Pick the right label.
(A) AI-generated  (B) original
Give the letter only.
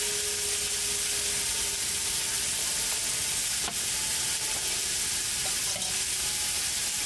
B